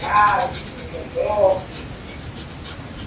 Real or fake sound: real